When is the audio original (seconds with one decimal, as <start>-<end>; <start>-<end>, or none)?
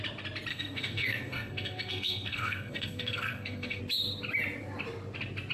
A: 0.0-0.5; 3.8-5.5